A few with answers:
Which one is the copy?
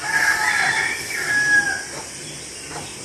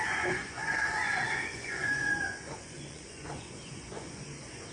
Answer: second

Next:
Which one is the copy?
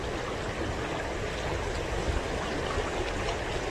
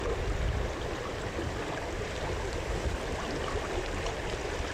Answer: second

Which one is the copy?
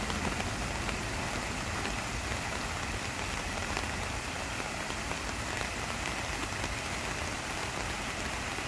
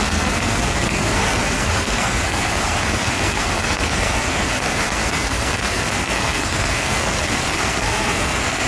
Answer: second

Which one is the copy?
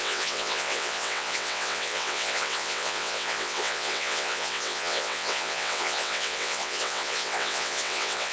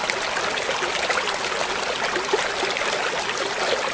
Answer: first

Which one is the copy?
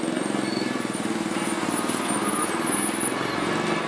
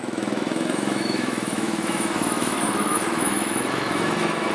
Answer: second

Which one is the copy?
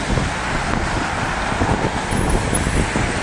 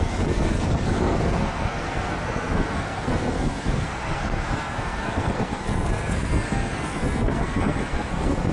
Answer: second